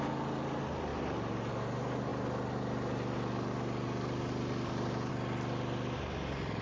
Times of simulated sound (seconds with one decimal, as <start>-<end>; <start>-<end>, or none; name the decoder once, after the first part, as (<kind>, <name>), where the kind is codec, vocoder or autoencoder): none